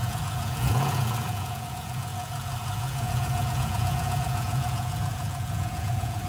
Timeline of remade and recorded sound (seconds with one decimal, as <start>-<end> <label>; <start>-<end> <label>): 0.0-6.3 remade